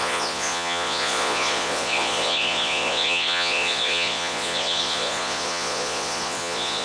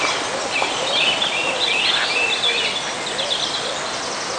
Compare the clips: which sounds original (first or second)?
second